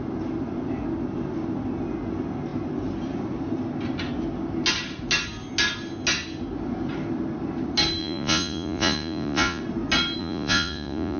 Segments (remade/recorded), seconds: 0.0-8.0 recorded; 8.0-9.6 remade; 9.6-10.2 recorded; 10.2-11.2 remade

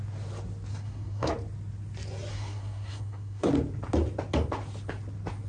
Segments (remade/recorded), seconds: 0.0-0.7 recorded; 0.7-1.3 remade; 1.3-2.3 recorded; 2.3-3.5 remade; 3.5-5.5 recorded

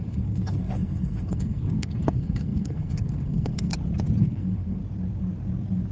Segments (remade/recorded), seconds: 0.0-3.7 remade; 3.7-4.2 recorded; 4.2-4.8 remade; 4.8-5.9 recorded

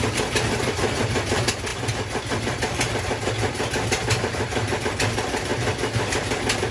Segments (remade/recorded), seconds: 0.0-6.7 recorded

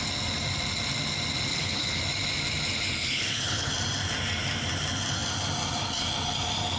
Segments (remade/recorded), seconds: 0.0-1.5 recorded; 1.5-2.0 remade; 2.0-3.0 recorded; 3.0-3.7 remade; 3.7-6.8 recorded

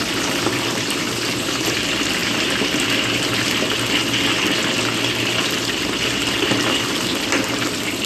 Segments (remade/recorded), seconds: 0.0-2.2 remade; 2.2-5.5 recorded; 5.5-8.1 remade

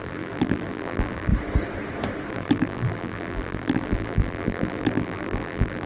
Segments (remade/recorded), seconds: 0.0-1.3 remade; 1.3-2.3 recorded; 2.3-5.9 remade

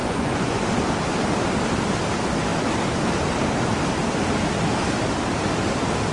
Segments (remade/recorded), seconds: 0.0-0.6 remade; 0.6-6.1 recorded